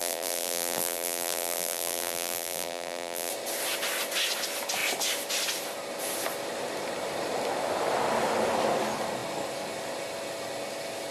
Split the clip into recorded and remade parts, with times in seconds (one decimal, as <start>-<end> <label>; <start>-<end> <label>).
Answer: 0.0-3.3 remade; 3.3-11.1 recorded